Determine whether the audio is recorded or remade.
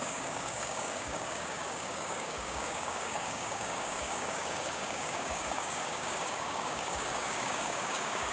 remade